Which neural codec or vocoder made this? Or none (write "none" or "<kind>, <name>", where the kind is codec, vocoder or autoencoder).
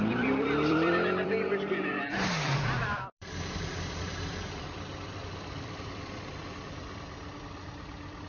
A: vocoder, BigVGAN v2